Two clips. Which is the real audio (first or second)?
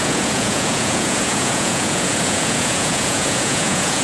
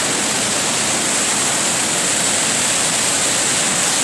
second